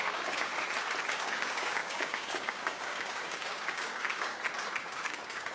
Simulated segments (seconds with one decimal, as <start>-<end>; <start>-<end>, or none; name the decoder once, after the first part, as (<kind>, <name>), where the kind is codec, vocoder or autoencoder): 0.0-0.5 (codec, DAC); 1.1-4.3; 4.8-5.5